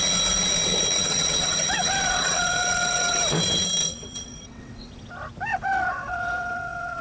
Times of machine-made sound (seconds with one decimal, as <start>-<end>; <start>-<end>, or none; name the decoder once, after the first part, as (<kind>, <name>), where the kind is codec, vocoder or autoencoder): 1.0-3.2 (vocoder, WaveNeXt); 3.8-5.1; 5.5-7.0